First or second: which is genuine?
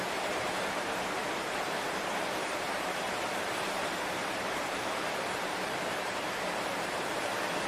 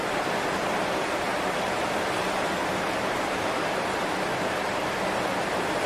second